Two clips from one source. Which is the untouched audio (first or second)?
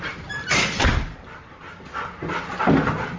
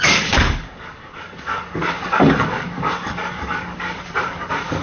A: first